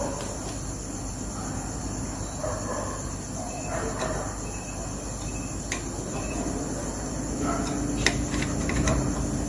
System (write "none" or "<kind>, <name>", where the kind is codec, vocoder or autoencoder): none